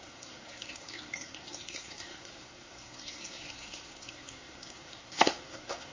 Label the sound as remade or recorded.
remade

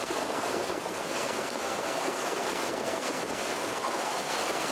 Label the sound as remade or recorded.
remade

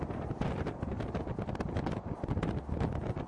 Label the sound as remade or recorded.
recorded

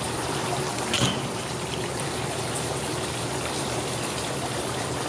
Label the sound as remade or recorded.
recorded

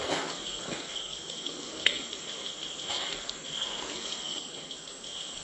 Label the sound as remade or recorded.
remade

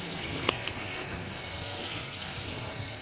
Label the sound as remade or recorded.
remade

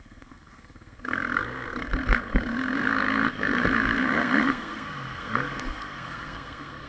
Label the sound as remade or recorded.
remade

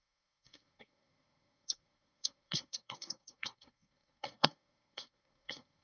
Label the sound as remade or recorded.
remade